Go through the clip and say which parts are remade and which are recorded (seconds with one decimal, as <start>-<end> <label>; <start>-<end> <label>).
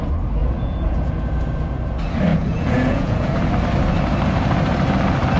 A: 0.0-0.4 recorded; 0.4-1.3 remade; 1.3-2.3 recorded; 2.3-3.4 remade; 3.4-5.4 recorded